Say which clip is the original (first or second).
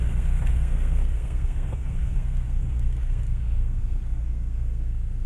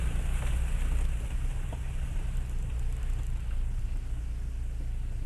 second